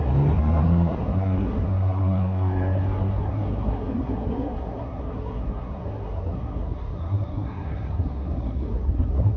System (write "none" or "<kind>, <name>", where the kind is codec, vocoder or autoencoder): codec, SNAC